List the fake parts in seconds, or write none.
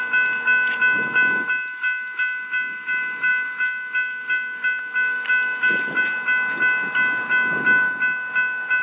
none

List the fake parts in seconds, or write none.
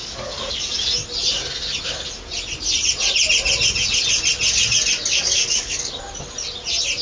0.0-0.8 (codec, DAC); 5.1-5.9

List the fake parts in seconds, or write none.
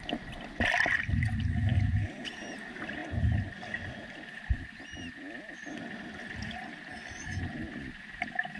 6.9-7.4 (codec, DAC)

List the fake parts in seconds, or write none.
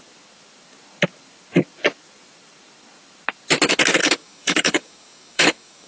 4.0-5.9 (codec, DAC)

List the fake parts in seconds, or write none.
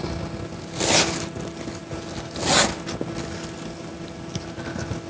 none